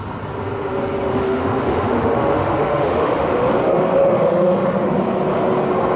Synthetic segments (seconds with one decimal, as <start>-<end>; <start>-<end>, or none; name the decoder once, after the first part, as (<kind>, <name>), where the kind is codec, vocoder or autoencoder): 1.1-4.7 (autoencoder, DAC-VAE)

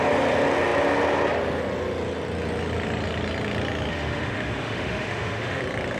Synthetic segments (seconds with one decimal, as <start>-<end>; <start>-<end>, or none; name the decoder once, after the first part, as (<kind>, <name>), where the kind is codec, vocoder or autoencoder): 3.9-5.6 (autoencoder, DAC-VAE)

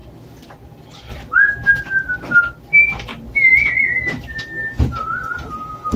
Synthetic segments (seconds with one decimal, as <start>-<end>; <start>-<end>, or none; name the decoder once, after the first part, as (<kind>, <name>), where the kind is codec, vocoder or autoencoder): none